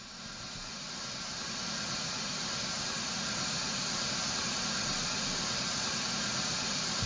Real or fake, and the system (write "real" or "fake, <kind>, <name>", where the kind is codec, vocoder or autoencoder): real